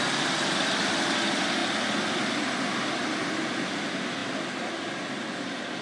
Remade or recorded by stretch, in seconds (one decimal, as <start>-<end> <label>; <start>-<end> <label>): 0.0-5.8 recorded